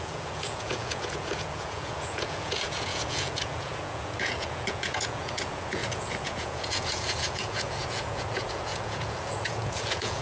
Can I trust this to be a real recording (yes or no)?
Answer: no